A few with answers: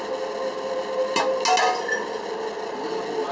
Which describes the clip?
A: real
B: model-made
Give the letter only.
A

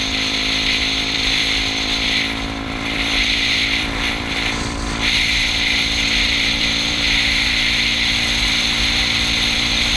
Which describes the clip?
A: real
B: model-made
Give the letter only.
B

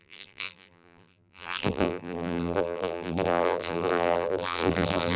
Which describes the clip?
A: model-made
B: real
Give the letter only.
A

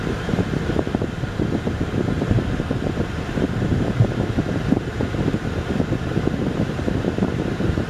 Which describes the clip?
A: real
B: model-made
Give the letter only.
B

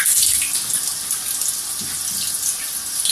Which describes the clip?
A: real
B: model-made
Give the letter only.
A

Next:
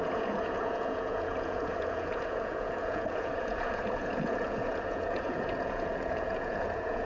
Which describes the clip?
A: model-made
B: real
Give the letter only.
A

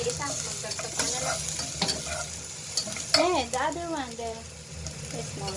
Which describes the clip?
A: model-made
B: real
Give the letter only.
B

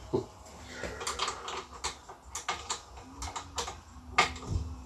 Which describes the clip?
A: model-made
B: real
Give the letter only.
B